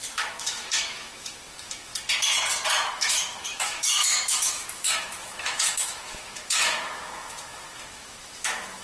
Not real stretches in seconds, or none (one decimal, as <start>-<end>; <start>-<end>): 0.0-1.9; 2.7-8.8